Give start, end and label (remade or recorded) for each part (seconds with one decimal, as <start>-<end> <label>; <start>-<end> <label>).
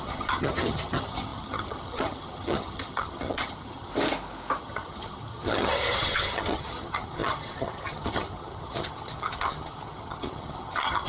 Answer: 0.0-3.9 remade; 3.9-4.6 recorded; 4.6-11.1 remade